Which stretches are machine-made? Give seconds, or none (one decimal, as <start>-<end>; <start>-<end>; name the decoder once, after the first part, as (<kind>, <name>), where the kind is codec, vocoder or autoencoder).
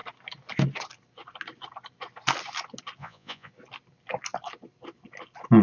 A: 3.0-3.5 (vocoder, Vocos)